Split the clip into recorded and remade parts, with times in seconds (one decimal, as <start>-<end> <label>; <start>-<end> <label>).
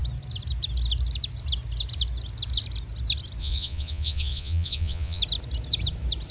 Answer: 0.0-3.4 recorded; 3.4-5.2 remade; 5.2-6.3 recorded